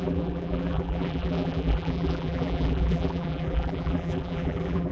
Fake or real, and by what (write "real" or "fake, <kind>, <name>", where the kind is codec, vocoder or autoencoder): fake, vocoder, BigVGAN v2